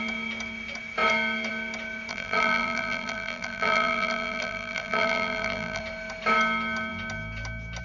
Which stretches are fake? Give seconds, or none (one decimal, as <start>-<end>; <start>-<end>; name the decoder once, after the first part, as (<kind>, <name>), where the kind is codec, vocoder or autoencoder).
2.1-5.8 (vocoder, BigVGAN v2)